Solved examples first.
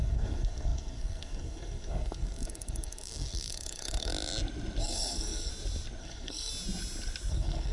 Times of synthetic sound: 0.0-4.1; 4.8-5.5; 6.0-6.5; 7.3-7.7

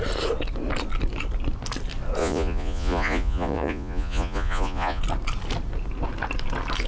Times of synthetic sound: 2.2-5.0

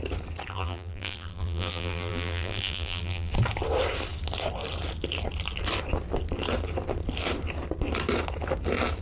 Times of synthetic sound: 0.5-3.3

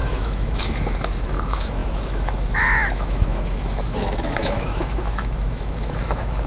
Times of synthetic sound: 0.0-6.5

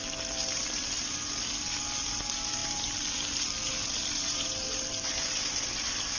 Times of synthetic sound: none

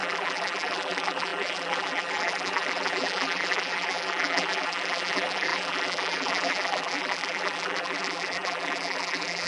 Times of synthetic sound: 0.0-9.5